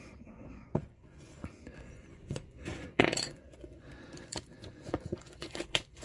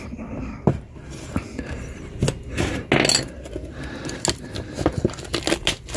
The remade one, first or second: first